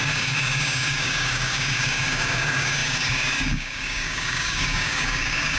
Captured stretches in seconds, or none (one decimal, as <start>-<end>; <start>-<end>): none